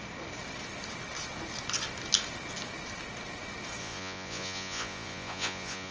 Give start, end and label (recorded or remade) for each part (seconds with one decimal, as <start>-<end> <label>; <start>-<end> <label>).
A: 0.0-3.8 recorded; 3.8-5.9 remade